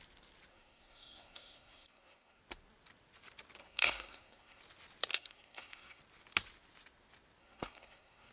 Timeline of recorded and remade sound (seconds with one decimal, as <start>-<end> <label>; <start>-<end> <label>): 0.0-0.5 recorded; 0.5-2.4 remade; 2.4-3.6 recorded; 3.6-4.6 remade; 4.6-5.1 recorded; 5.1-6.0 remade; 6.0-7.4 recorded; 7.4-8.3 remade